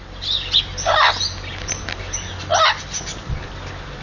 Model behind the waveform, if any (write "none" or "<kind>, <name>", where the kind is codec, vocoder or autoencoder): none